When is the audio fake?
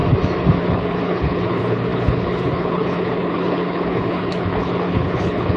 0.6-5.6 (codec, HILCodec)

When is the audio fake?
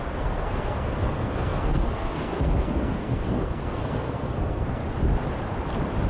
0.0-4.8 (codec, SNAC)